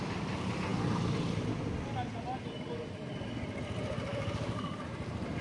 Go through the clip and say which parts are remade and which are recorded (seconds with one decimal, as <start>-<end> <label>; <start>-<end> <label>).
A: 0.0-4.1 recorded; 4.1-4.8 remade; 4.8-5.4 recorded